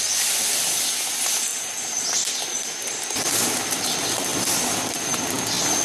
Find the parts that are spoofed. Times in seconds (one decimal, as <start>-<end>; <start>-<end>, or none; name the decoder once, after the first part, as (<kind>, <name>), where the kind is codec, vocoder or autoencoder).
none